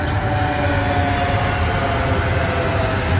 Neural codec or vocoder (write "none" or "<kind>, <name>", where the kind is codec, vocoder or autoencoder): none